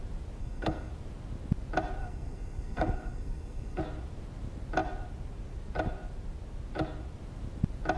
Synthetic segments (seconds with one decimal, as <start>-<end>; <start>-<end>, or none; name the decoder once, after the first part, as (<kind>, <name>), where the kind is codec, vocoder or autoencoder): 0.4-0.9 (codec, SNAC); 2.0-3.8